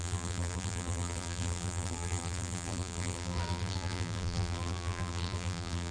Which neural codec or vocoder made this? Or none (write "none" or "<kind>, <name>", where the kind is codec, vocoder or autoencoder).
vocoder, BigVGAN v2